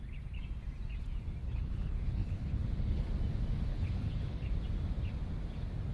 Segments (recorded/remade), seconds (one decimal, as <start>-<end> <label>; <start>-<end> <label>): 0.0-1.4 recorded; 1.4-3.1 remade; 3.1-3.7 recorded; 3.7-4.5 remade; 4.5-5.9 recorded